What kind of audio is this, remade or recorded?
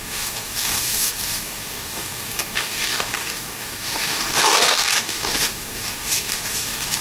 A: remade